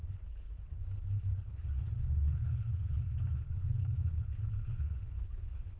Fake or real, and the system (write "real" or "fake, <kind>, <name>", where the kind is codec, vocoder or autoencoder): fake, codec, HILCodec